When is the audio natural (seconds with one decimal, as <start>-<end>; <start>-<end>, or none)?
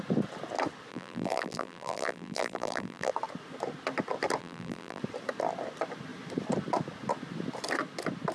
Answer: 0.0-0.9; 3.1-4.4; 5.0-8.3